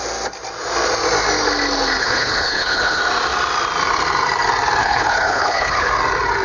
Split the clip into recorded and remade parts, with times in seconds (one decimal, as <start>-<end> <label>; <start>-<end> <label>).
0.0-2.0 recorded; 2.0-3.0 remade; 3.0-4.8 recorded; 4.8-5.9 remade; 5.9-6.4 recorded